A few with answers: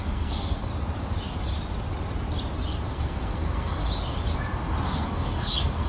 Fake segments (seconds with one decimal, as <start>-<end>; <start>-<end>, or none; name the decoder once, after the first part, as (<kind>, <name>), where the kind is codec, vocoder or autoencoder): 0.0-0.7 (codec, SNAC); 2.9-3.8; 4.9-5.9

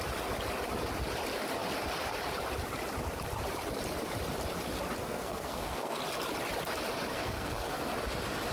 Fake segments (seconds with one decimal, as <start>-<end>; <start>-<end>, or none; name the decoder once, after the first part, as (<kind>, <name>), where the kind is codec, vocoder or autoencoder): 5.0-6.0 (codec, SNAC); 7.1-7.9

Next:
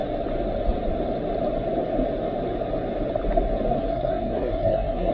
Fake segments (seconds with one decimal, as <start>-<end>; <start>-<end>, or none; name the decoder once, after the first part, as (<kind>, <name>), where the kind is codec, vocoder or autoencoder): 3.8-5.1 (codec, SNAC)

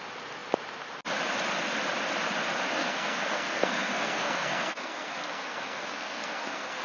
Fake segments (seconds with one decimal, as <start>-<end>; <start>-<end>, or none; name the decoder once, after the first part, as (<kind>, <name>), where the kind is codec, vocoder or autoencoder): 2.8-6.8 (codec, SNAC)